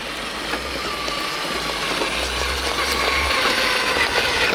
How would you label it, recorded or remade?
recorded